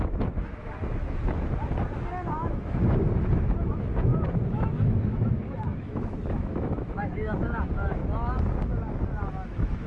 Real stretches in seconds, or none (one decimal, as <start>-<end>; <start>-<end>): 8.0-9.3